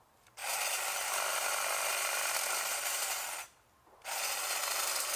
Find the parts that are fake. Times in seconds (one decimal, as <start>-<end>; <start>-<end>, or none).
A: none